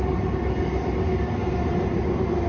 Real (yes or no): yes